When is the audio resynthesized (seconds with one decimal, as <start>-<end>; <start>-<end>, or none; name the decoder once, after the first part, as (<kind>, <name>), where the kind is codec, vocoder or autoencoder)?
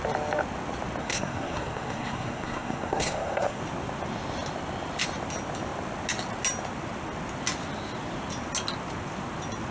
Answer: 1.0-3.6 (codec, SNAC)